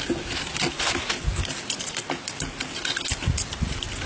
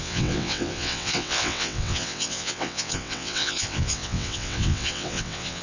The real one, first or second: first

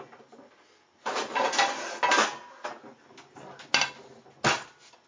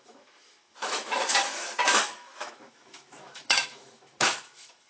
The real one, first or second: first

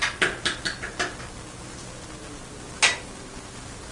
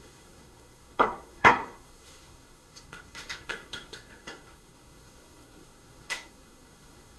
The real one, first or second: first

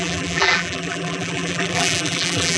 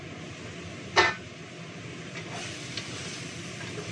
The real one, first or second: second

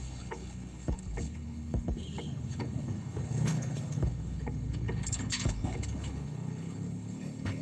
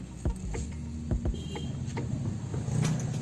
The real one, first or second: second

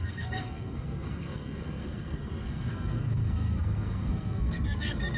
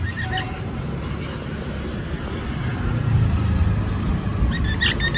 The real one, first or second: second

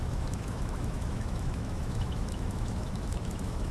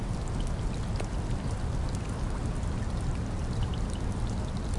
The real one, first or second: second